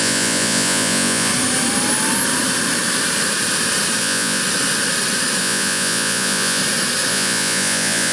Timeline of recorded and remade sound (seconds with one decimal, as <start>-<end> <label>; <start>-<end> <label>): 0.0-1.3 remade; 1.3-4.0 recorded; 4.0-4.4 remade; 4.4-5.4 recorded; 5.4-6.6 remade; 6.6-7.1 recorded; 7.1-8.1 remade